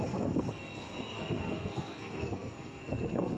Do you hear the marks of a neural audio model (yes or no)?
yes